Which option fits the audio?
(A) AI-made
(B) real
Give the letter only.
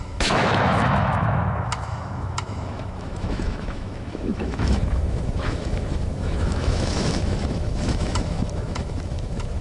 A